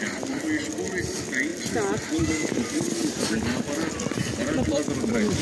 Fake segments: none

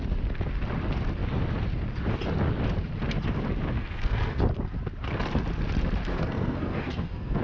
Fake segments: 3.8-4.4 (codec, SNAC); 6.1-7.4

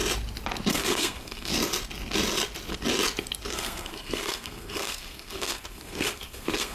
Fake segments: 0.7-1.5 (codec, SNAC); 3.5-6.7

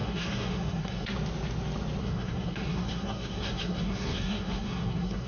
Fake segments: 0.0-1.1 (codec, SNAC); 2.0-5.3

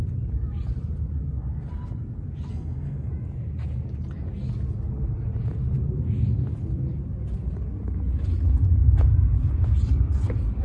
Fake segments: 2.5-3.1 (codec, SNAC)

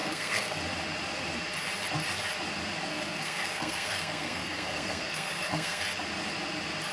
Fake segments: 0.0-0.6 (codec, SNAC); 2.9-5.8

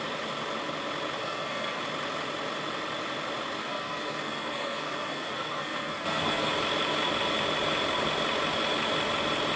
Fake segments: 1.2-1.8 (codec, SNAC); 3.6-6.5

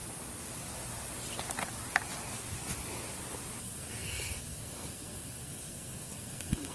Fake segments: 3.6-6.7 (codec, SNAC)